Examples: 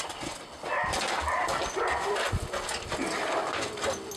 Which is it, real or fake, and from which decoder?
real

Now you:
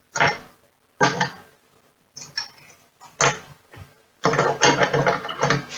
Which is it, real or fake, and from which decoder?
real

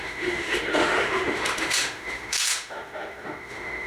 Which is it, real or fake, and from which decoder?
fake, autoencoder, DAC-VAE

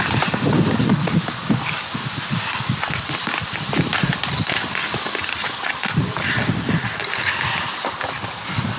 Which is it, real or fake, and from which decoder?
real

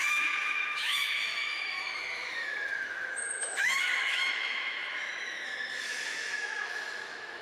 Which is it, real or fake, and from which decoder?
fake, autoencoder, DAC-VAE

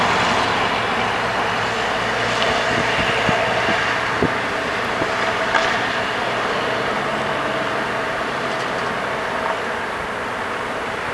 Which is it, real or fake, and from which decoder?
real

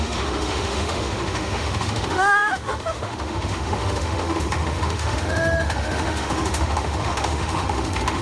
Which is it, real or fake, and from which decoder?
fake, autoencoder, DAC-VAE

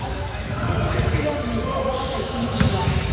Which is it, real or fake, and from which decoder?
fake, autoencoder, DAC-VAE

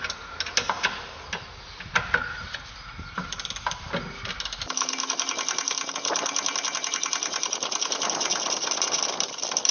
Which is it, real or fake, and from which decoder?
real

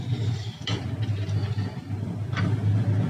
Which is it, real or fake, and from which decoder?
real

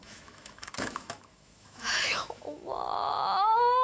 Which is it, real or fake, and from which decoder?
fake, autoencoder, DAC-VAE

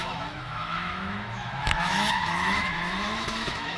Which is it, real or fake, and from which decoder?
fake, autoencoder, DAC-VAE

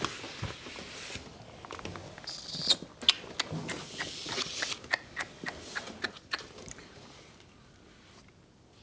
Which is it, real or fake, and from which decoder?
real